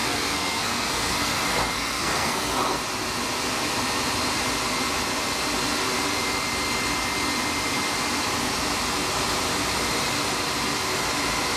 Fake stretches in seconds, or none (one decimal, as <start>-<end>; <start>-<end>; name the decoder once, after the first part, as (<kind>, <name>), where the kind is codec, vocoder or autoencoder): 0.0-2.8 (codec, SNAC)